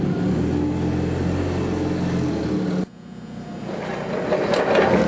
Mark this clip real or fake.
real